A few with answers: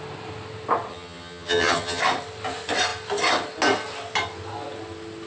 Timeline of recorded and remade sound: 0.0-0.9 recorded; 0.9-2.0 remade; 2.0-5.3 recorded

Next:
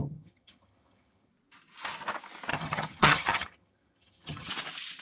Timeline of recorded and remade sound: 0.0-1.3 remade; 1.3-2.5 recorded; 2.5-4.5 remade; 4.5-5.0 recorded

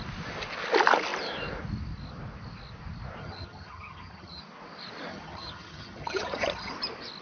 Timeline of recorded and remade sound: 0.0-3.2 recorded; 3.2-4.4 remade; 4.4-5.1 recorded; 5.1-6.7 remade; 6.7-7.2 recorded

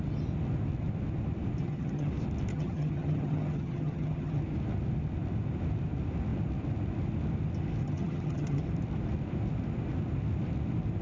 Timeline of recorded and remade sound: 0.0-1.6 recorded; 1.6-2.1 remade; 2.1-2.5 recorded; 2.5-4.4 remade; 4.4-7.8 recorded; 7.8-8.6 remade; 8.6-11.0 recorded

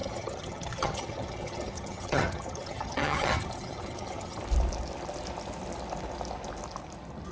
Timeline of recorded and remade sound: 0.0-4.4 remade; 4.4-7.3 recorded

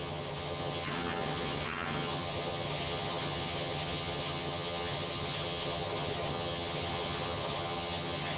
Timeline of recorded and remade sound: 0.0-8.4 remade

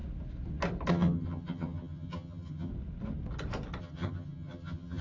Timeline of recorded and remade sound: 0.0-0.9 recorded; 0.9-2.7 remade; 2.7-3.8 recorded; 3.8-5.0 remade